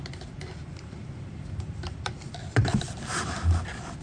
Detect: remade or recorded remade